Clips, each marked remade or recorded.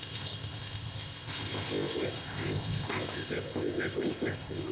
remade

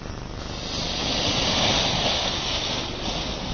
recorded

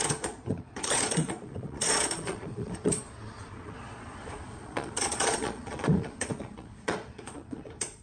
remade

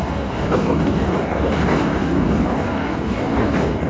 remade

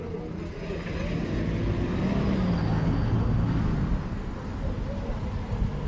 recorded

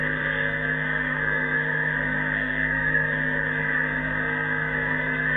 remade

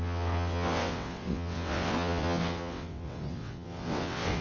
remade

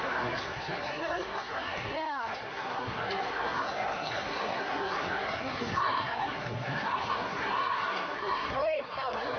remade